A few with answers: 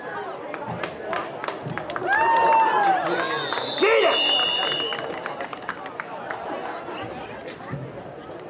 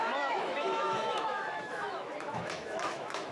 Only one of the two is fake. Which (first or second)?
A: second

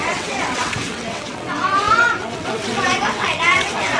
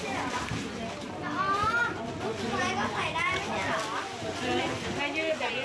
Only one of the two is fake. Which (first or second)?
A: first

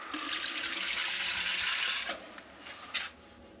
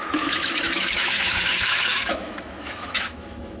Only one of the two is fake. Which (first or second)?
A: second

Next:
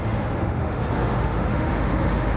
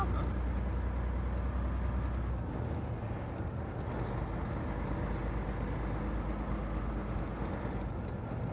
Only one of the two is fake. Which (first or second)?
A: first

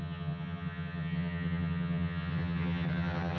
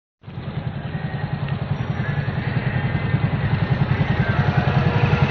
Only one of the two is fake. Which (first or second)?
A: first